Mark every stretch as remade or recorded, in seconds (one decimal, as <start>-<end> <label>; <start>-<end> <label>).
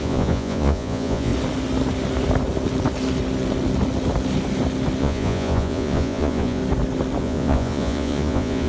0.0-1.3 remade; 1.3-5.0 recorded; 5.0-6.6 remade; 6.6-7.2 recorded; 7.2-8.7 remade